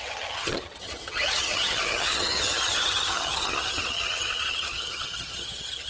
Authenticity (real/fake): fake